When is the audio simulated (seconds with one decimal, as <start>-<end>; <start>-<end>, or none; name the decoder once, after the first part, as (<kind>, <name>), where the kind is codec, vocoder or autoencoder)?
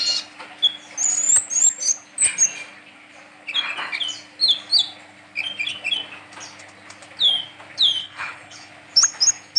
8.0-8.7 (codec, HILCodec)